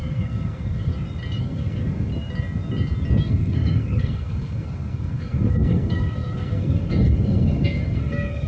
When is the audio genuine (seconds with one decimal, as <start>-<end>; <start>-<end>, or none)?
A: 0.9-1.4; 2.1-3.2